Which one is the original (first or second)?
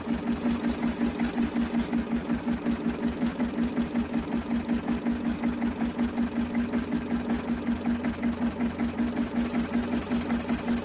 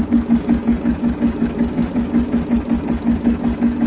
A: first